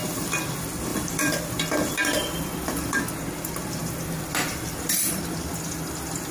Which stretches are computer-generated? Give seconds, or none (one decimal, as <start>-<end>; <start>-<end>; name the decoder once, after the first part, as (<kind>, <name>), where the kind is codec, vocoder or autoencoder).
0.9-3.0 (vocoder, BigVGAN v2); 3.8-5.2